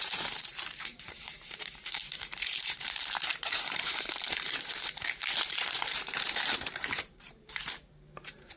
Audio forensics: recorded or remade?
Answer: remade